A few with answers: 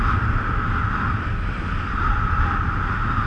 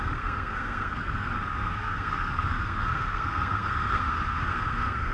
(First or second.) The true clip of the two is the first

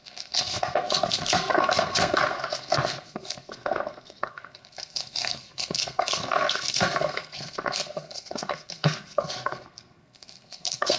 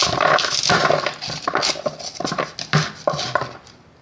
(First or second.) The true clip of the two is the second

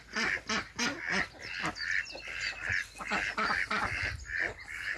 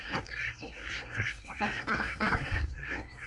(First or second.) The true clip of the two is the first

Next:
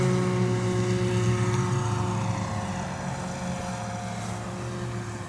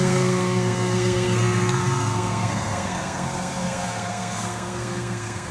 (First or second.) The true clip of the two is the first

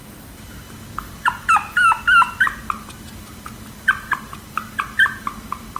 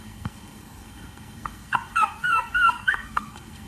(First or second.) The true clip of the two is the first